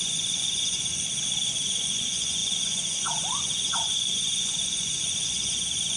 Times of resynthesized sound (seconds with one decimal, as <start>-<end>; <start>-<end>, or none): 0.0-0.9; 1.7-6.0